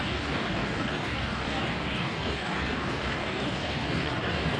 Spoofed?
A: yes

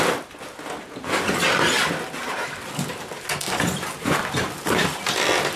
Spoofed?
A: no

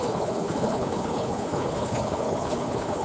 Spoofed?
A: yes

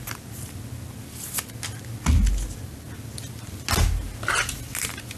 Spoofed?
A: no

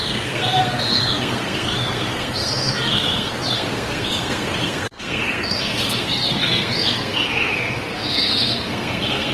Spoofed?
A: yes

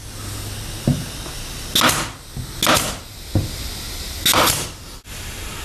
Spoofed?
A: no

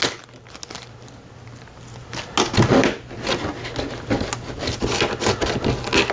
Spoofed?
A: no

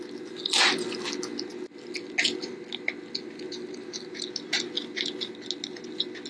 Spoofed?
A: no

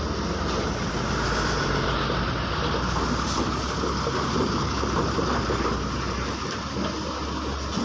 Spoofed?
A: no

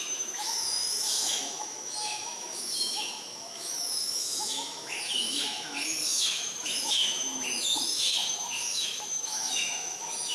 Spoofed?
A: yes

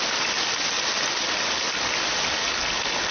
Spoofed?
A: no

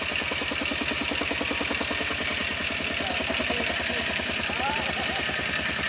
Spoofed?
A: no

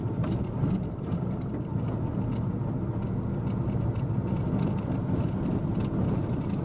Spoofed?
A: no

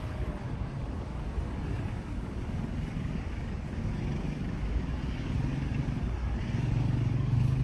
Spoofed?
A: yes